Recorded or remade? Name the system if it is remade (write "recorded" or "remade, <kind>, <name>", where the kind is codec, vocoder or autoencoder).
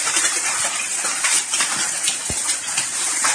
remade, vocoder, BigVGAN v2